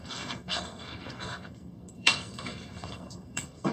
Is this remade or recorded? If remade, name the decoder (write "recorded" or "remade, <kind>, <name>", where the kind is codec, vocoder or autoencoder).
remade, codec, SNAC